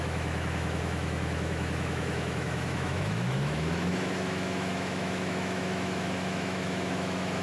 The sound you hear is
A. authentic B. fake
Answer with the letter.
B